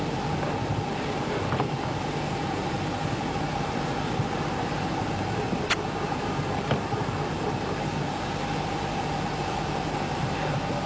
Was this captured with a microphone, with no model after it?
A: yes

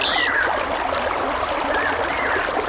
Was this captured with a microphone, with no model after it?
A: yes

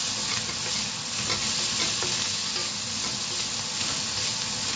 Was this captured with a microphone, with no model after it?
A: yes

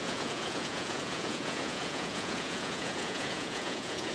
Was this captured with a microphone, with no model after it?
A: no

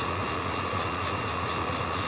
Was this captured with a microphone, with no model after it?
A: no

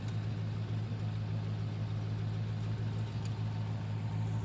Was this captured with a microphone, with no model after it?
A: yes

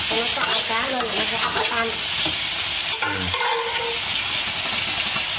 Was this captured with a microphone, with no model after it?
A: yes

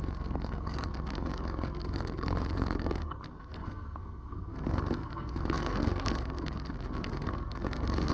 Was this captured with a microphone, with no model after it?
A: no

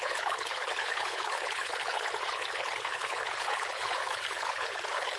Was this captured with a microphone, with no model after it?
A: no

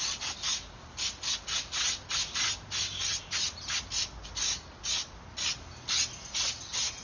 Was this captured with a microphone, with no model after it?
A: yes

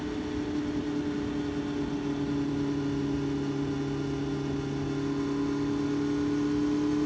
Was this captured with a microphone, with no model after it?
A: yes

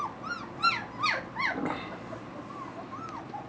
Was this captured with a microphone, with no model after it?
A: yes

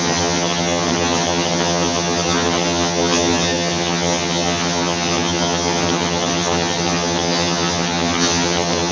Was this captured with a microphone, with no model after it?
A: no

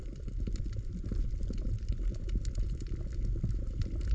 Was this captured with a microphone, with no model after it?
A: yes